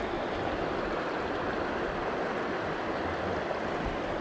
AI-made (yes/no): no